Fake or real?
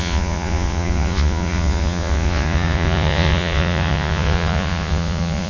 fake